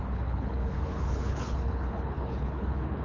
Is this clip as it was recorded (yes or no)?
no